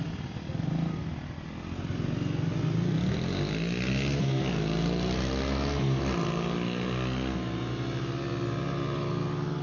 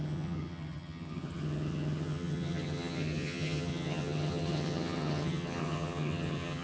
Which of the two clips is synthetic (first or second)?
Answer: second